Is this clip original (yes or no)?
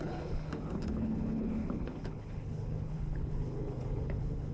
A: no